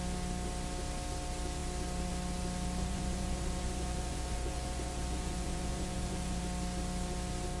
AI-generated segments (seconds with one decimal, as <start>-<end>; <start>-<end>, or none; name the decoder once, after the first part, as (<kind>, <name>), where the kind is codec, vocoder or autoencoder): 2.8-6.4 (vocoder, Vocos)